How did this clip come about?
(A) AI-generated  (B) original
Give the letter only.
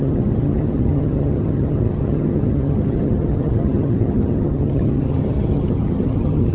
A